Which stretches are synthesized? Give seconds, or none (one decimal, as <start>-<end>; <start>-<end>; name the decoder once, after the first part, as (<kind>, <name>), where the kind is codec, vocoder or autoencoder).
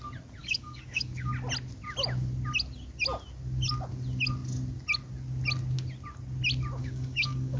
0.4-1.3 (codec, DAC); 6.8-7.6